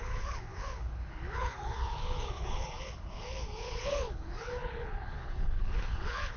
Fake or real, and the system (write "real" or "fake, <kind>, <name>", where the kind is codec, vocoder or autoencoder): fake, codec, HILCodec